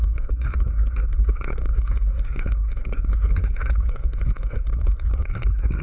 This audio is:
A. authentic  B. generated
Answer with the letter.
B